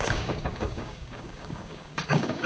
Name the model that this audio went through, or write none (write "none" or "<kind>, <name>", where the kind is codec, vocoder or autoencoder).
codec, DAC